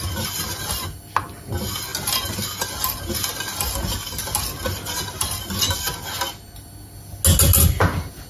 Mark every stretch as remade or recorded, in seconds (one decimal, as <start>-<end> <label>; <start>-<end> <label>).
0.0-8.3 recorded